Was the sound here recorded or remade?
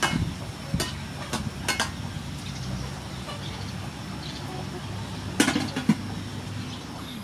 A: recorded